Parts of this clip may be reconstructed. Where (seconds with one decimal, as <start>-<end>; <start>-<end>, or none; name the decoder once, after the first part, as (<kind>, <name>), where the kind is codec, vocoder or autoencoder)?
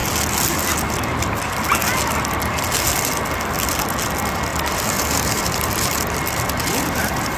4.5-7.4 (vocoder, BigVGAN v2)